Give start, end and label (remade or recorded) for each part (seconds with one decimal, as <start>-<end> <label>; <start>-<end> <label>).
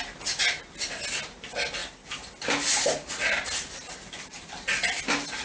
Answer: 0.0-5.4 recorded